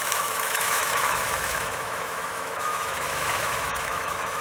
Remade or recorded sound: remade